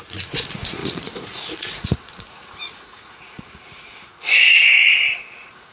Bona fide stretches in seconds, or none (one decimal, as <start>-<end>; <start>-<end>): none